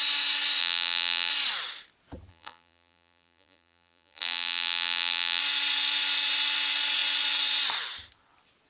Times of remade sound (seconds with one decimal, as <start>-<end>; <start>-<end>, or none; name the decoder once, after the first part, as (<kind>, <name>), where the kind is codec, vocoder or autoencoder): 0.6-1.3 (vocoder, BigVGAN v2); 2.3-5.4